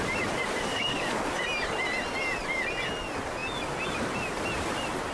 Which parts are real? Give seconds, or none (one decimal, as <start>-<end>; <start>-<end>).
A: 0.0-0.7; 1.3-5.1